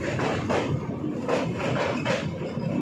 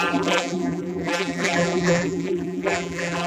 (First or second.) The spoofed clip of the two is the second